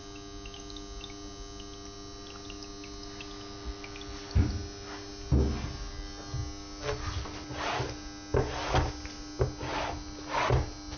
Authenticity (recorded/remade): recorded